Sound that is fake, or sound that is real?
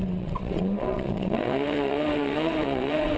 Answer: fake